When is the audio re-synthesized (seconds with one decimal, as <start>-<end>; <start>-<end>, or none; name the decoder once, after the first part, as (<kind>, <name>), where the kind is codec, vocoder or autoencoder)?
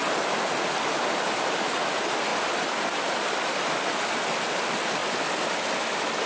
none